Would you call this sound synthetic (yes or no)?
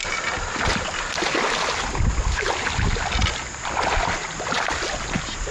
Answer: no